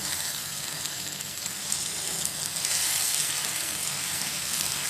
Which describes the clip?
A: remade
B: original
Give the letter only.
A